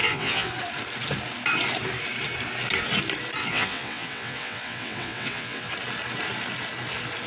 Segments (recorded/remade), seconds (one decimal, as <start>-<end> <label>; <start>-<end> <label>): 0.0-0.5 remade; 0.5-3.4 recorded; 3.4-5.7 remade; 5.7-7.3 recorded